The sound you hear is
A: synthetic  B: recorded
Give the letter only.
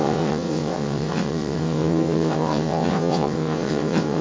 A